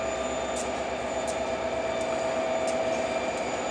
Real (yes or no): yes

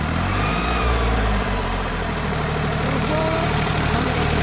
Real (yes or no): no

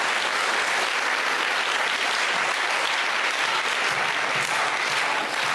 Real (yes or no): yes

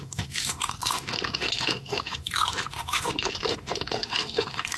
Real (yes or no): no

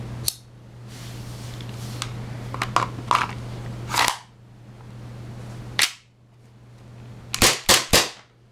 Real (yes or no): yes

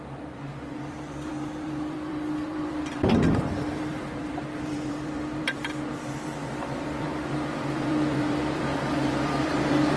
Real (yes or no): no